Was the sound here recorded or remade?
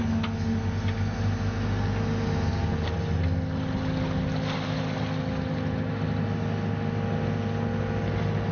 recorded